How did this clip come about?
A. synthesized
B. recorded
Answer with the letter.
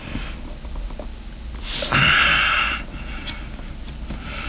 B